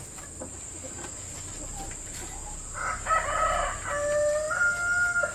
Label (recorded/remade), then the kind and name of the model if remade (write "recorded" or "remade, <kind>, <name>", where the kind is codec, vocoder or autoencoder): recorded